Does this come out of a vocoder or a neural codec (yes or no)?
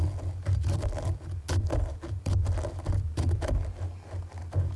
no